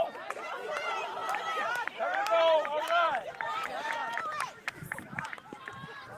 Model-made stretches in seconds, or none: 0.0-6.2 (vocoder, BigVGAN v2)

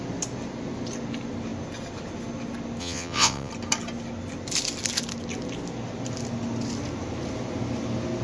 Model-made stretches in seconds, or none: 2.8-3.5 (vocoder, WaveNeXt)

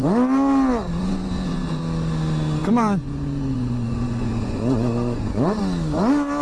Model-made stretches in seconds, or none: 1.0-1.8 (vocoder, Vocos); 2.6-5.6

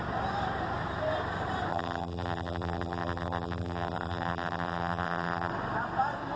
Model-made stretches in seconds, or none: 1.7-5.5 (vocoder, BigVGAN v2)

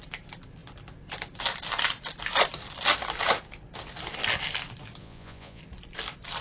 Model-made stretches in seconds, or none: 5.0-5.6 (vocoder, Vocos)

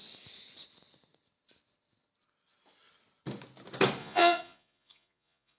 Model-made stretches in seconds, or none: 4.0-5.6 (vocoder, Vocos)

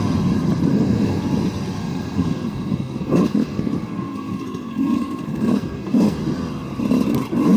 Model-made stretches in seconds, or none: 0.7-1.2 (codec, SNAC); 1.8-6.2